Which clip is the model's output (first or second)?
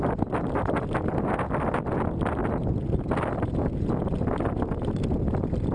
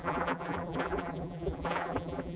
second